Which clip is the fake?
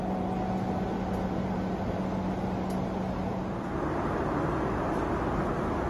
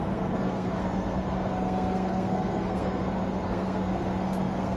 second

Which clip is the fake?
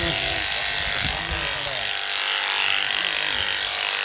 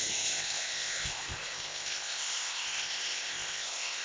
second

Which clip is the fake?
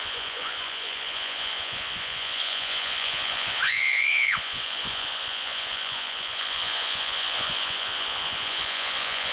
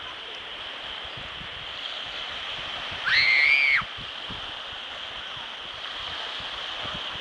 first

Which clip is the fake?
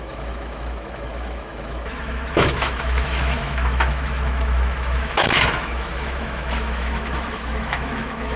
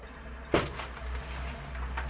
first